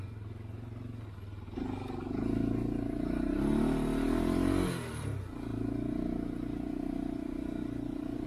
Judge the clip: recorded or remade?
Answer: recorded